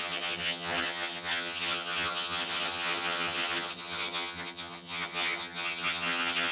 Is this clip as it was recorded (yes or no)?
no